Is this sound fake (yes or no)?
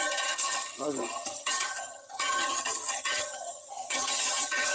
yes